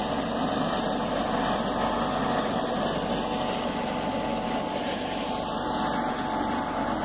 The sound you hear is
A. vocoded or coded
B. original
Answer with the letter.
B